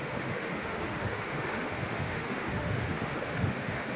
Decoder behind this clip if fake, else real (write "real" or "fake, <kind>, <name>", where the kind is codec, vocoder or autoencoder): fake, autoencoder, DAC-VAE